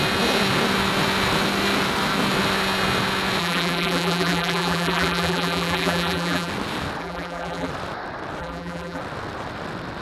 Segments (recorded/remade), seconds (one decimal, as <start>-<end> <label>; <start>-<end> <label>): 0.0-3.4 recorded; 3.4-6.5 remade; 6.5-7.0 recorded; 7.0-7.7 remade; 7.7-8.4 recorded; 8.4-9.0 remade; 9.0-10.0 recorded

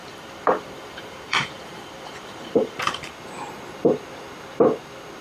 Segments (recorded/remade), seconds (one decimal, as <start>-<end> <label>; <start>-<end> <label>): 0.0-3.1 remade; 3.1-5.2 recorded

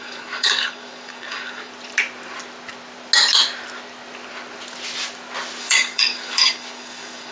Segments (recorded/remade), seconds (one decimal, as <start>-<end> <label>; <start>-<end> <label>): 0.0-1.7 remade; 1.7-5.6 recorded; 5.6-7.3 remade